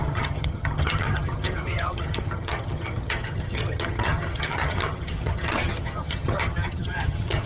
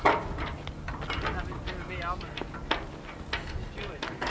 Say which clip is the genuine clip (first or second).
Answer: second